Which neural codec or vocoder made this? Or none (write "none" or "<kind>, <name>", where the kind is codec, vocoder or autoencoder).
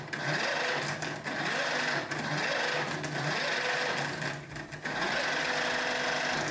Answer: none